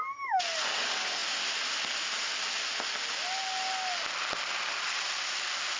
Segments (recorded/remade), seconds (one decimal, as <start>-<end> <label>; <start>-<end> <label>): 0.0-5.8 recorded